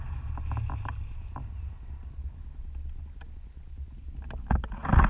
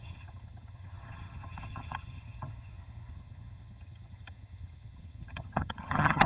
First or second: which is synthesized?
second